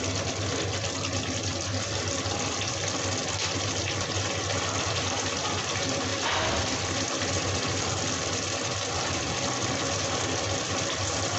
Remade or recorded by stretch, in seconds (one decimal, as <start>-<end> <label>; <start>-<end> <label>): 0.0-11.4 recorded